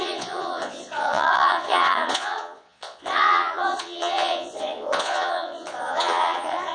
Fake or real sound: fake